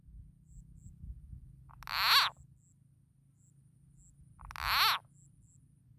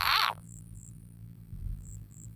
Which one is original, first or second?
first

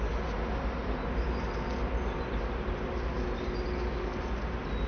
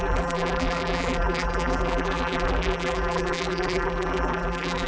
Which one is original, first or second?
first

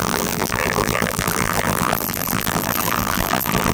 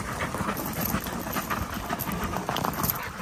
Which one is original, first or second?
second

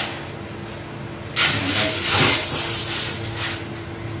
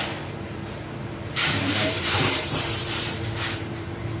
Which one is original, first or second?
first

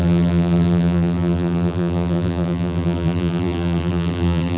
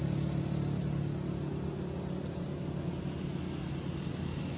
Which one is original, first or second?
second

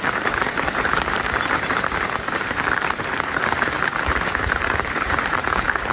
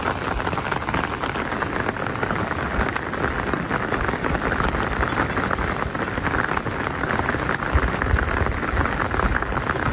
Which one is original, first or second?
second